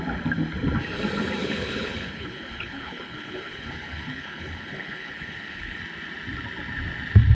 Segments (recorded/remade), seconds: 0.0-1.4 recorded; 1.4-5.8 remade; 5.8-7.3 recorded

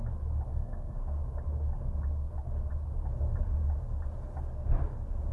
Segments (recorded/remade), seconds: 0.0-0.5 recorded; 0.5-1.2 remade; 1.2-5.3 recorded

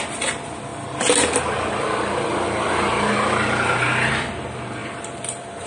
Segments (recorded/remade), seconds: 0.0-4.8 recorded; 4.8-5.7 remade

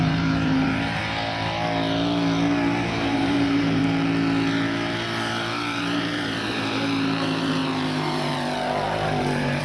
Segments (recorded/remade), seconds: 0.0-1.0 remade; 1.0-3.1 recorded; 3.1-3.8 remade; 3.8-5.8 recorded; 5.8-9.6 remade

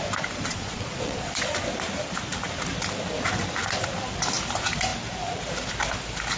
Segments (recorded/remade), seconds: 0.0-0.5 recorded; 0.5-1.5 remade; 1.5-6.4 recorded

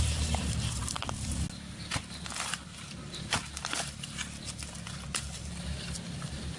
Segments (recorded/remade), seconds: 0.0-6.6 recorded

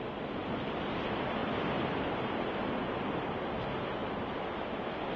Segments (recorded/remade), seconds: 0.0-1.4 recorded; 1.4-3.4 remade; 3.4-4.0 recorded; 4.0-4.6 remade; 4.6-5.2 recorded

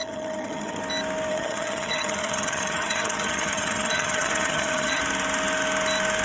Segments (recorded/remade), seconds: 0.0-0.8 remade; 0.8-1.3 recorded; 1.3-5.0 remade; 5.0-6.2 recorded